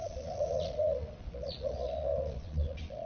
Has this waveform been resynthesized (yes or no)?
yes